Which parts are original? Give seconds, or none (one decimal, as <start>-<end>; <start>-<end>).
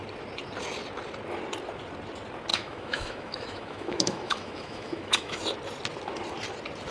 0.0-2.5; 5.4-6.9